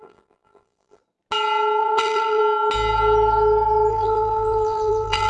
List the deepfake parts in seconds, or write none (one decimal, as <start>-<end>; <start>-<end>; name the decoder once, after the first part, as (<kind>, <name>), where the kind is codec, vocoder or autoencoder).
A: 0.0-1.0 (vocoder, BigVGAN v2); 1.8-2.4; 3.9-5.3